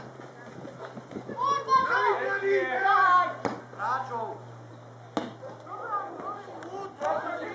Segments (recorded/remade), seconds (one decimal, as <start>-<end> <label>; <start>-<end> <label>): 0.0-7.5 recorded